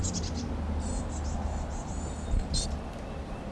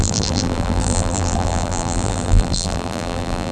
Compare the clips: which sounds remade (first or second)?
second